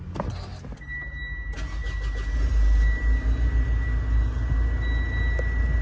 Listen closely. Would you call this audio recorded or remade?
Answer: recorded